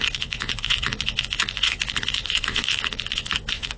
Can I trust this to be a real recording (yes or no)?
no